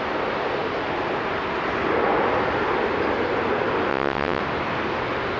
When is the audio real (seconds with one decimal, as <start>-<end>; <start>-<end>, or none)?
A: 0.0-3.9; 4.4-5.4